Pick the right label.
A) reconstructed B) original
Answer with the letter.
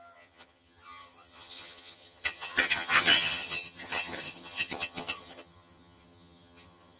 A